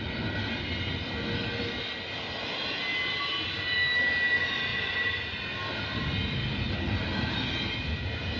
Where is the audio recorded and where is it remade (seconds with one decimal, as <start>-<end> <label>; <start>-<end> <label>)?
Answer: 0.0-8.4 recorded